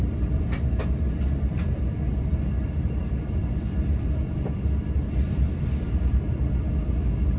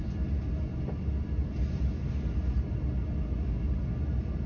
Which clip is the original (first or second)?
second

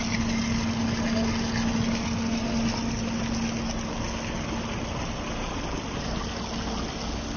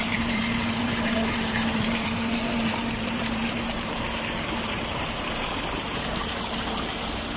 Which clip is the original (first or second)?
first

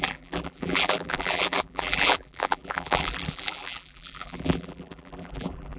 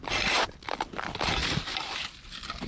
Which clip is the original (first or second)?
second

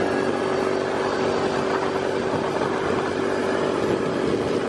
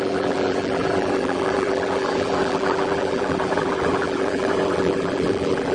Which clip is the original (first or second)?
first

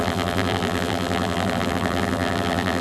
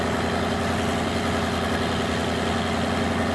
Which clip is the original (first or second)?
second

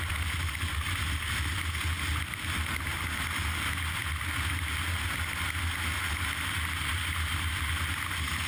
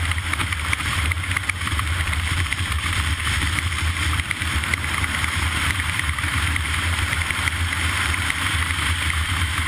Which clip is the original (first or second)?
first